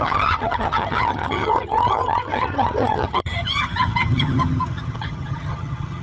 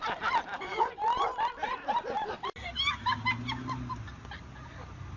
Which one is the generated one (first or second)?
first